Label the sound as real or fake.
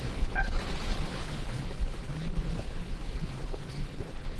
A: fake